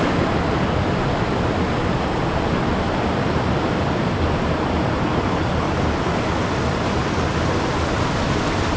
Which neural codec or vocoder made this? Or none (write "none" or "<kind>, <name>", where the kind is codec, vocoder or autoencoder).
none